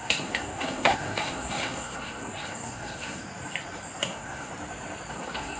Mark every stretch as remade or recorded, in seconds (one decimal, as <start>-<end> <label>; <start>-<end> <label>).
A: 0.0-3.2 remade; 3.2-4.0 recorded; 4.0-4.5 remade; 4.5-5.1 recorded; 5.1-5.6 remade